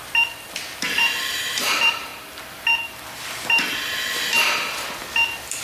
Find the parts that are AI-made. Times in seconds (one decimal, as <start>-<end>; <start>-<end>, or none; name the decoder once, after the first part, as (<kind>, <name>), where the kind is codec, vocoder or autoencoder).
0.0-2.1 (vocoder, BigVGAN v2)